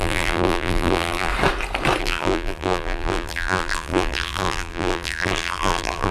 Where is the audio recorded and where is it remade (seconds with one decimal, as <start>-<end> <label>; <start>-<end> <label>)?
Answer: 0.0-1.3 remade; 1.3-2.0 recorded; 2.0-6.1 remade